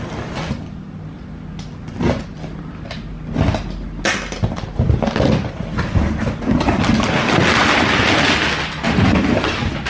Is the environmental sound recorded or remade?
recorded